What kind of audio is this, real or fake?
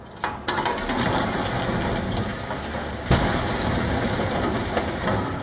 real